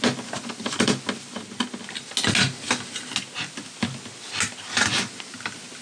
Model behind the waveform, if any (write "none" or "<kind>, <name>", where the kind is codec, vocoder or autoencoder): none